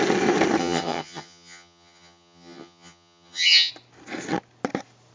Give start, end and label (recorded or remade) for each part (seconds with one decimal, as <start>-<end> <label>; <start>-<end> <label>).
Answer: 0.0-0.6 recorded; 0.6-3.7 remade; 3.7-5.1 recorded